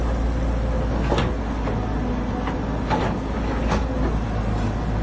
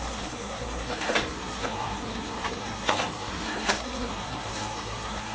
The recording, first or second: first